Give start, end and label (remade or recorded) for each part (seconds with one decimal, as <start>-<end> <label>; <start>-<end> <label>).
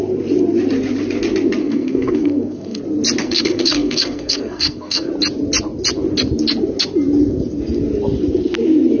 0.0-1.6 recorded; 1.6-2.8 remade; 2.8-3.2 recorded; 3.2-5.1 remade; 5.1-9.0 recorded